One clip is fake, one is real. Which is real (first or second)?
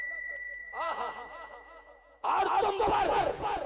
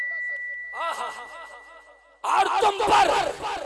second